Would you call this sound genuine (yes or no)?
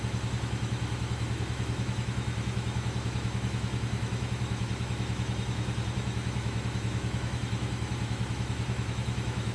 no